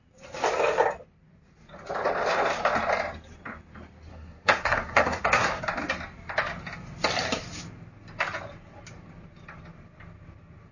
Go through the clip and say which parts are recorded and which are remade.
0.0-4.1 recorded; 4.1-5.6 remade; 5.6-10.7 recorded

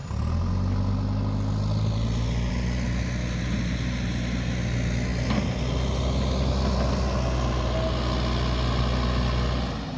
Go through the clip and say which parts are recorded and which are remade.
0.0-10.0 recorded

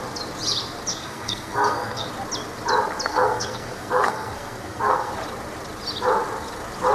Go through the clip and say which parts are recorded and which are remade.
0.0-0.9 recorded; 0.9-2.1 remade; 2.1-3.1 recorded; 3.1-5.1 remade; 5.1-6.9 recorded